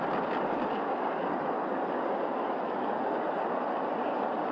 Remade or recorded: recorded